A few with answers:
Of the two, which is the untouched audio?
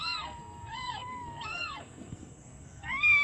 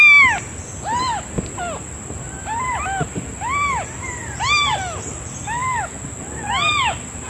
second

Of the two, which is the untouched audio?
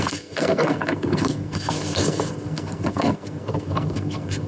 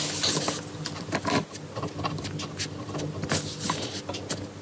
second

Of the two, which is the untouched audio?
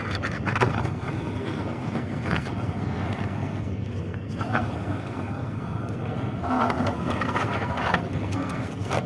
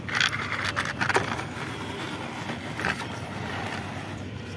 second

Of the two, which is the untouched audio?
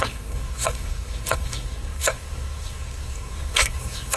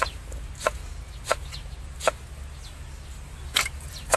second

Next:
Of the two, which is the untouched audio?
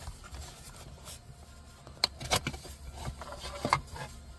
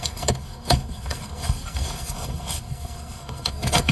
first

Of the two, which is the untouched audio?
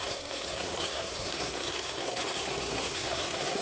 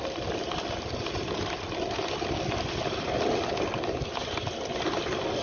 second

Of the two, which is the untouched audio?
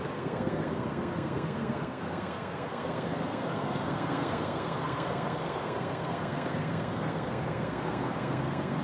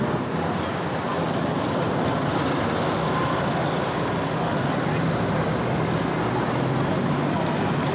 second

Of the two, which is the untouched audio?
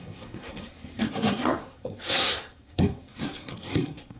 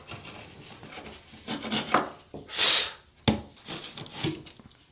second